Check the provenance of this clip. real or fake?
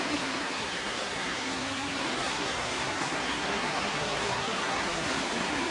fake